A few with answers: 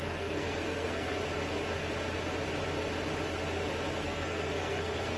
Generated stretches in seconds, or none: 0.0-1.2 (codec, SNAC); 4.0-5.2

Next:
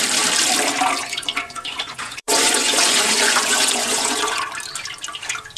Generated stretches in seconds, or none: 1.0-4.4 (vocoder, Vocos)